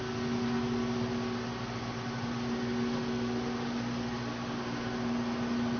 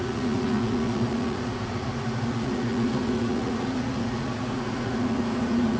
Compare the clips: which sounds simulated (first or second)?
second